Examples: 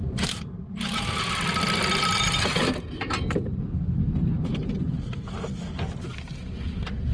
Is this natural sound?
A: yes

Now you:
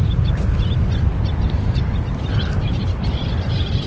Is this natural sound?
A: yes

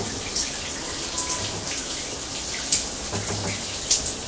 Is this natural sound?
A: yes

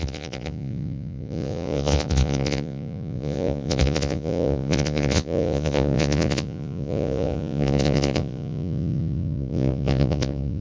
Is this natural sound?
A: no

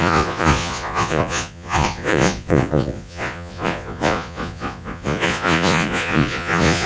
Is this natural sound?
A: no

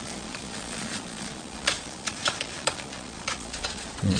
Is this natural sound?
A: no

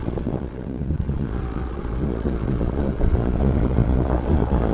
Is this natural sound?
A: no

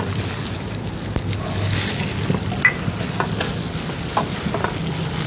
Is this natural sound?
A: yes